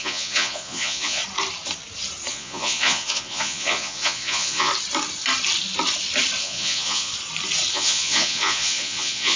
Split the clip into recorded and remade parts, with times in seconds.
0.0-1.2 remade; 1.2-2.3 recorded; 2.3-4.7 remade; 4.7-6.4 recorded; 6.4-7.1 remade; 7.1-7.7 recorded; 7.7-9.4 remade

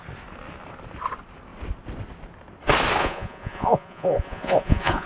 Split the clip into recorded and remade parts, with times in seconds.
0.0-3.0 recorded; 3.0-5.1 remade

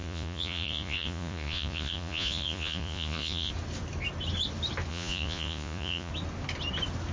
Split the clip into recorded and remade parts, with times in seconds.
0.0-3.5 remade; 3.5-4.9 recorded; 4.9-6.1 remade; 6.1-7.1 recorded

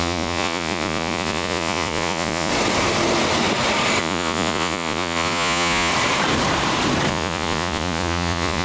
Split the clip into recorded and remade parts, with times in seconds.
0.0-2.5 remade; 2.5-4.0 recorded; 4.0-5.9 remade; 5.9-7.1 recorded; 7.1-8.6 remade

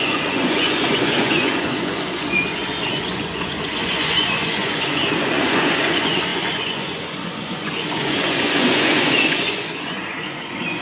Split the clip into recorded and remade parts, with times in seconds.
0.0-10.8 remade

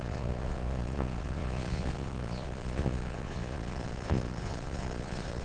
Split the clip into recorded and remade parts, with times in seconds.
0.0-5.4 remade